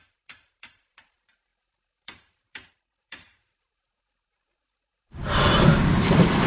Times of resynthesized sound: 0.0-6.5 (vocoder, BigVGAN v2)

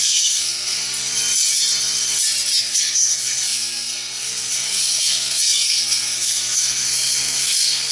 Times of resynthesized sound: 0.0-0.8 (codec, SNAC); 2.6-7.9

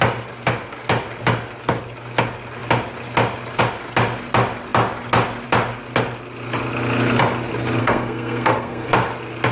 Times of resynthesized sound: 7.8-8.9 (codec, SNAC)

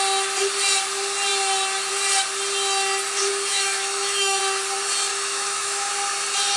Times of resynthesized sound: 3.5-4.4 (autoencoder, DAC-VAE); 5.1-5.9

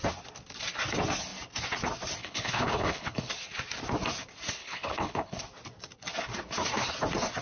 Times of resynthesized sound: 2.2-3.3 (codec, HILCodec); 4.6-5.4